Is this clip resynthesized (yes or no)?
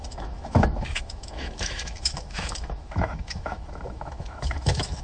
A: yes